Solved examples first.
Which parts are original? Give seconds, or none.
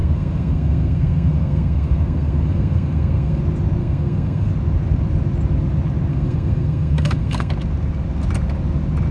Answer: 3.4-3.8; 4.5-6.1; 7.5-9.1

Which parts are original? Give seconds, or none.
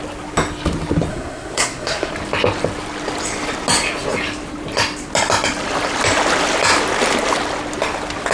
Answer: 0.0-1.1; 2.1-8.3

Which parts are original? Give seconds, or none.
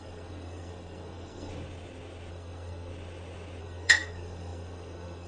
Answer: 1.5-2.3; 2.9-3.6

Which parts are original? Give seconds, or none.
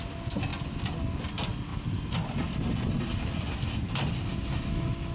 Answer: 0.0-5.1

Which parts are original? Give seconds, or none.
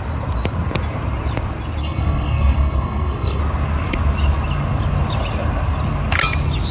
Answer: 0.0-1.8; 3.4-6.7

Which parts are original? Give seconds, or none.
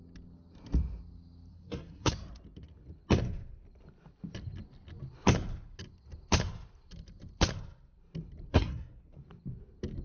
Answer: 0.0-1.5; 2.1-8.5; 9.0-10.0